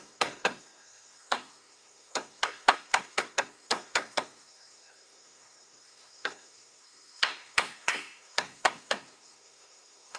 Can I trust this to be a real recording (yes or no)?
no